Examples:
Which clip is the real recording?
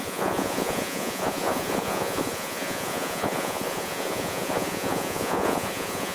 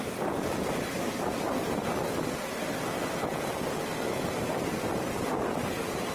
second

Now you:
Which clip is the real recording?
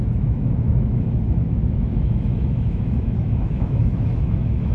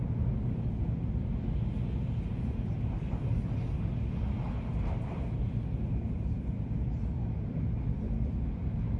second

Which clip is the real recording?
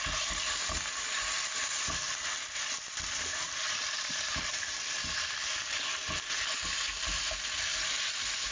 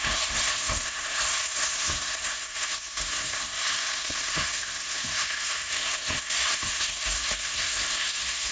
first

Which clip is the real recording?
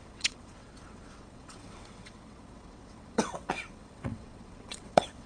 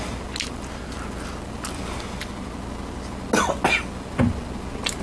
second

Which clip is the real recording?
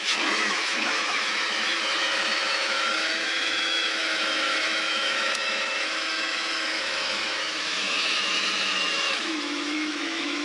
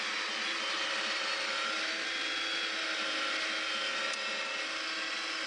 second